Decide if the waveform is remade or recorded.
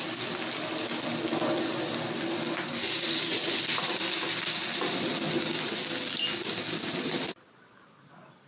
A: recorded